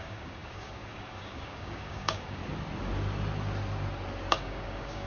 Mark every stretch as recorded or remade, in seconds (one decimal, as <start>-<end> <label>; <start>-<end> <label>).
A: 0.0-2.4 remade; 2.4-4.3 recorded; 4.3-5.1 remade